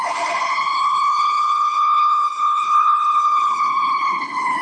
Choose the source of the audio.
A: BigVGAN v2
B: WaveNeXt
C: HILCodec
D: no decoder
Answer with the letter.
C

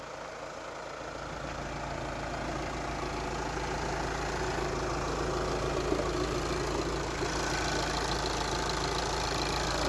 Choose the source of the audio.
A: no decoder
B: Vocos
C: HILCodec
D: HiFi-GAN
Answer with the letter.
A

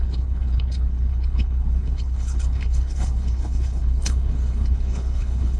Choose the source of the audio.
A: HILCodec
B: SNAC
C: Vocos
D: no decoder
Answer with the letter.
A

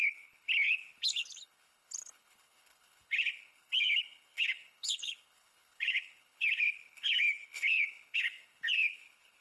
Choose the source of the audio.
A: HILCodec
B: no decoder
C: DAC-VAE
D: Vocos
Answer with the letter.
A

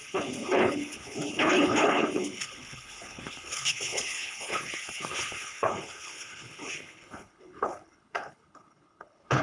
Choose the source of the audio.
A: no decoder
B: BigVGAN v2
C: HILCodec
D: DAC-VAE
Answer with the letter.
C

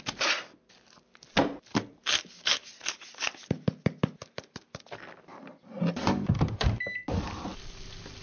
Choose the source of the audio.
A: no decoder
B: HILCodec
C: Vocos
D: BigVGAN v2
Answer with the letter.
A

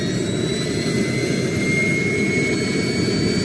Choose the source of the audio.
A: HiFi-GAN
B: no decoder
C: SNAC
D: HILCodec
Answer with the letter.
B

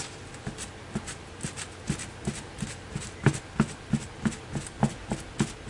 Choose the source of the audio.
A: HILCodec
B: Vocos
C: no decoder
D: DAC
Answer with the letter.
C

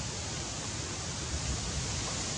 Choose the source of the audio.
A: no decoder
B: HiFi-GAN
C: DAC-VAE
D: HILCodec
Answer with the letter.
A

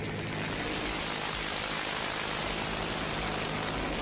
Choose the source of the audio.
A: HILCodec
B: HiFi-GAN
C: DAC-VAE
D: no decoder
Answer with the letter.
D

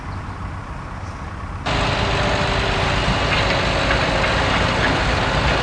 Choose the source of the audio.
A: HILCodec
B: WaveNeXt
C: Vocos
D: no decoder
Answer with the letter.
D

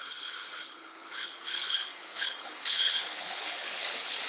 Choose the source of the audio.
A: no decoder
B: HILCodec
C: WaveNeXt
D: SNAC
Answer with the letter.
B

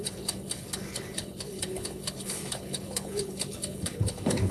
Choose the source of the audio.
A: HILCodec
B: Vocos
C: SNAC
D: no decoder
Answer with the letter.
A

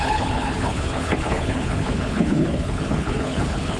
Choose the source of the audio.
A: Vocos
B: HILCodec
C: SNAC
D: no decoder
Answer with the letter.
B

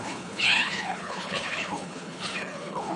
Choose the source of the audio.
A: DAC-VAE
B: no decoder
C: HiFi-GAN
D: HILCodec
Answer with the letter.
D